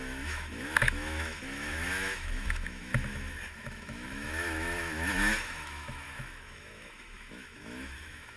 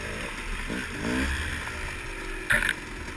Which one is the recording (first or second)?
second